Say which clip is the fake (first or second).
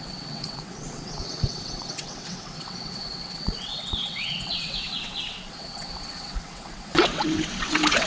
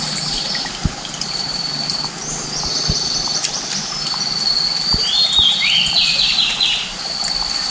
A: first